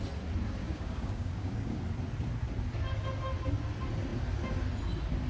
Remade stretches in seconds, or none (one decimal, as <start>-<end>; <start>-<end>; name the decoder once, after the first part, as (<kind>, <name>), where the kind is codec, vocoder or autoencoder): 0.6-1.8 (codec, DAC)